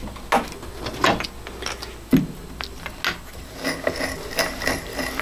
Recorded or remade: recorded